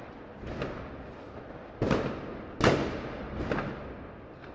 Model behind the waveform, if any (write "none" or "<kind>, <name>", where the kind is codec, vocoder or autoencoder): none